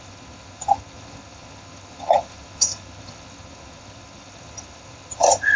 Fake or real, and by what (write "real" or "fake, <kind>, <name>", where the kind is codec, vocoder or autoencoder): fake, vocoder, HiFi-GAN